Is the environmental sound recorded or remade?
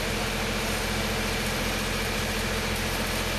recorded